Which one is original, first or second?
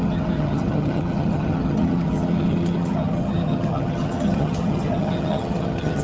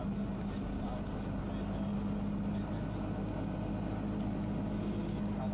second